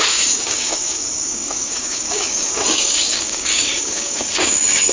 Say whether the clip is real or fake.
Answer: fake